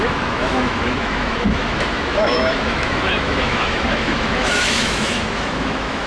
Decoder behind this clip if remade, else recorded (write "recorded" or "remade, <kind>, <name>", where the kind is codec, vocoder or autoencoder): remade, autoencoder, DAC-VAE